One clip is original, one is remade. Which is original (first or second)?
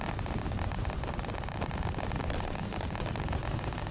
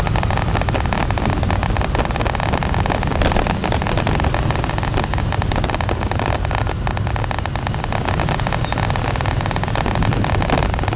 second